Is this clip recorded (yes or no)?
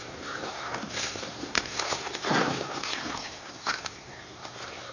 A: no